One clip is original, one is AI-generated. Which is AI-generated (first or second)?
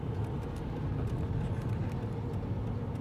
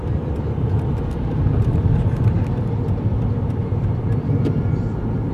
second